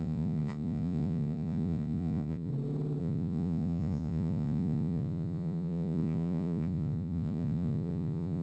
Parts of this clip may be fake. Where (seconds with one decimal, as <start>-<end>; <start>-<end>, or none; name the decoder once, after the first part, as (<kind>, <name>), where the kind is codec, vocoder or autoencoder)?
0.0-2.5 (vocoder, Vocos); 3.0-8.4